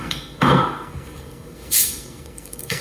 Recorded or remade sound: remade